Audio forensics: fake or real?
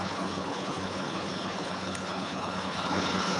fake